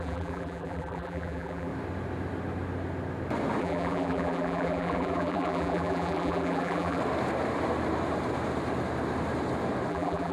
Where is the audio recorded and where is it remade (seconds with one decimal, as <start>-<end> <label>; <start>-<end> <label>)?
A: 0.0-1.7 remade; 1.7-3.6 recorded; 3.6-7.0 remade; 7.0-9.9 recorded; 9.9-10.3 remade

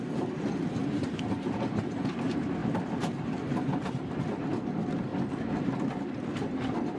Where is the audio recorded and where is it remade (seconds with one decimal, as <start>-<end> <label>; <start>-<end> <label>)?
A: 0.0-0.8 recorded; 0.8-2.2 remade; 2.2-2.6 recorded; 2.6-4.1 remade; 4.1-5.1 recorded; 5.1-5.7 remade; 5.7-7.0 recorded

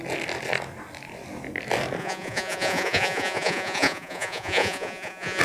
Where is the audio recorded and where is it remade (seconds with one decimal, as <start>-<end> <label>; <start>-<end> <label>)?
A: 0.0-2.0 recorded; 2.0-5.4 remade

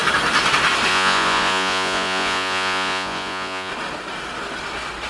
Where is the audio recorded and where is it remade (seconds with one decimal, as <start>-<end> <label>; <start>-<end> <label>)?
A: 0.0-0.9 recorded; 0.9-3.7 remade; 3.7-5.1 recorded

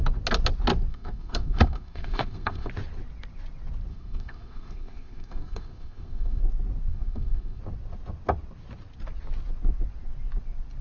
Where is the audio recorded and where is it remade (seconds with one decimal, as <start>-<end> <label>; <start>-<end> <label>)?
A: 0.0-0.9 recorded; 0.9-2.7 remade; 2.7-3.9 recorded; 3.9-6.4 remade; 6.4-6.9 recorded; 6.9-7.6 remade; 7.6-10.8 recorded

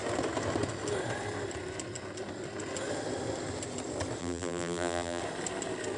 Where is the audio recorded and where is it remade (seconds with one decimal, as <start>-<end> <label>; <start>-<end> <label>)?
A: 0.0-4.2 recorded; 4.2-5.2 remade; 5.2-6.0 recorded